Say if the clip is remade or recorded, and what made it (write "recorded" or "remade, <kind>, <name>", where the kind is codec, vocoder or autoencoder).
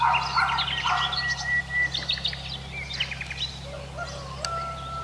recorded